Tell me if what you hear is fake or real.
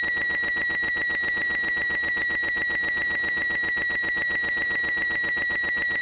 real